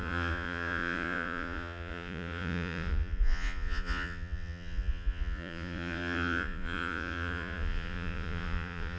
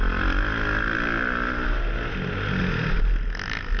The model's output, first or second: first